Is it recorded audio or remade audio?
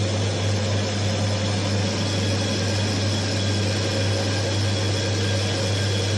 recorded